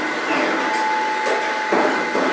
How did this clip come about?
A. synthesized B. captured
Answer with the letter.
B